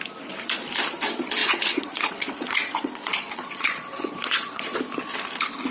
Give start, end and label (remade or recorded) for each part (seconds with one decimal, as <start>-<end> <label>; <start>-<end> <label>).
0.0-1.4 recorded; 1.4-4.8 remade; 4.8-5.7 recorded